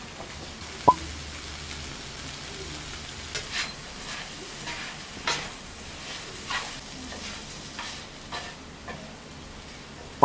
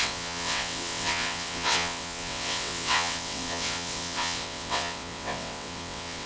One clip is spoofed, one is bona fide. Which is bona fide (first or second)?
first